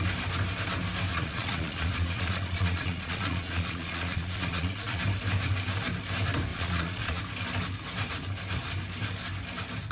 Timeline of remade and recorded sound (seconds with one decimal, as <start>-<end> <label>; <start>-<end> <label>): 0.0-1.1 recorded; 1.1-5.0 remade; 5.0-6.5 recorded; 6.5-7.2 remade; 7.2-9.9 recorded